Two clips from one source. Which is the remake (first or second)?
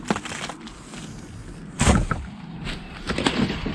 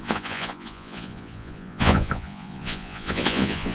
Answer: second